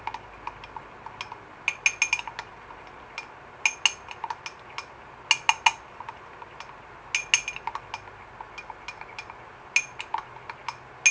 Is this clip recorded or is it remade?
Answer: recorded